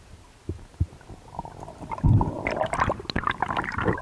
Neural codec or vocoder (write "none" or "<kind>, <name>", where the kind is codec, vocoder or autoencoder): none